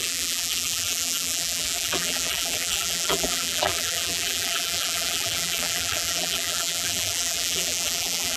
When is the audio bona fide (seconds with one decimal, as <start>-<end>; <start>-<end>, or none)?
none